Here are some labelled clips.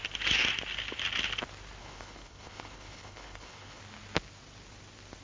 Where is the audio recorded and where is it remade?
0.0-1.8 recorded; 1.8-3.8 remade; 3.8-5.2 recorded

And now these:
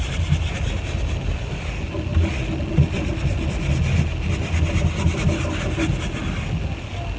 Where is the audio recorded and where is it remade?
0.0-7.2 recorded

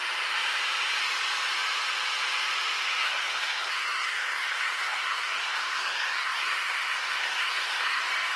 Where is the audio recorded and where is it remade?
0.0-3.0 recorded; 3.0-8.0 remade; 8.0-8.4 recorded

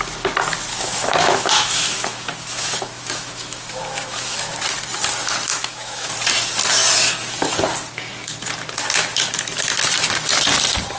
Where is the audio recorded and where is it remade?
0.0-0.7 recorded; 0.7-4.6 remade; 4.6-5.5 recorded; 5.5-6.1 remade; 6.1-11.0 recorded

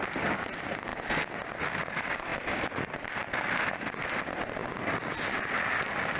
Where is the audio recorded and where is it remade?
0.0-6.2 recorded